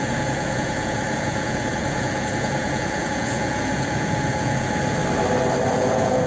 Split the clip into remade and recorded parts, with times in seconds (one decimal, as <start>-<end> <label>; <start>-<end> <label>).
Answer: 0.0-5.0 remade; 5.0-5.7 recorded; 5.7-6.3 remade